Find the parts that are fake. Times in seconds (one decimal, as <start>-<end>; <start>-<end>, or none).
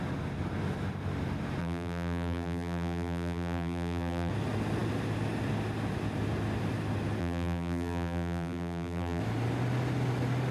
1.6-4.3; 7.2-9.2